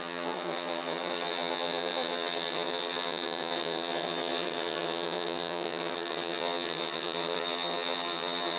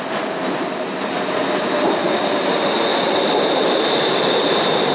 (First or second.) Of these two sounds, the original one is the second